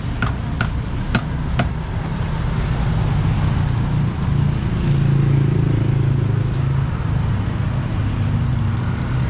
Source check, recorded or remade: recorded